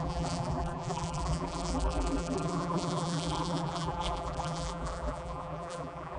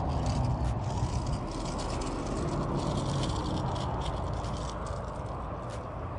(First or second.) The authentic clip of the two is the second